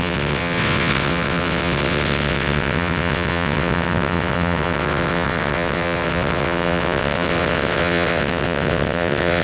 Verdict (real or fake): fake